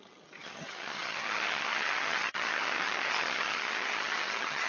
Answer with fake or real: fake